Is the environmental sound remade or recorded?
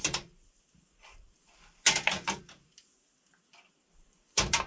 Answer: remade